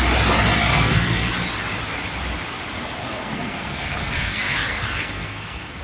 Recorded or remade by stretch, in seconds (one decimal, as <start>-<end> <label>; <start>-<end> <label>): 0.0-0.7 recorded; 0.7-1.3 remade; 1.3-3.0 recorded; 3.0-5.8 remade